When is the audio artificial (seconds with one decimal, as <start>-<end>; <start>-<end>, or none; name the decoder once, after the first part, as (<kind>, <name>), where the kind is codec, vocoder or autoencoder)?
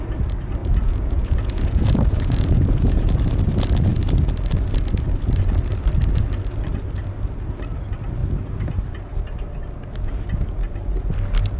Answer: 0.6-3.2 (vocoder, Vocos)